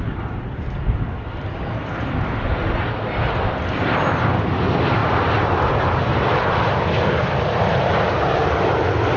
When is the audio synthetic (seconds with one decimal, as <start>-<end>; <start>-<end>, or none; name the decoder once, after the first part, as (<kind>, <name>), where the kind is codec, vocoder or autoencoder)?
none